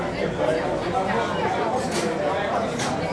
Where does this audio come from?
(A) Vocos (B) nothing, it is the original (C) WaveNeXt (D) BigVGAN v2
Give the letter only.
B